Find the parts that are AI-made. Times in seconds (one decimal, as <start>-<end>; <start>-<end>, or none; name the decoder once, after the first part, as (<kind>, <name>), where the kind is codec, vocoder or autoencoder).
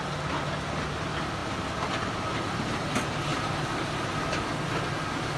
3.3-4.5 (vocoder, BigVGAN v2)